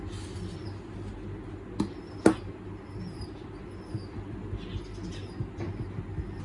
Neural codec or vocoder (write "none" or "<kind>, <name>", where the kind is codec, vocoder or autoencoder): none